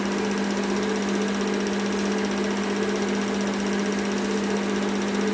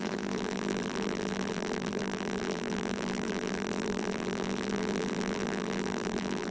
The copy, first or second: second